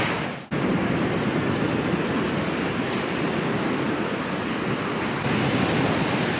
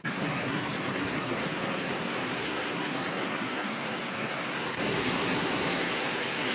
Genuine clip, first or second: first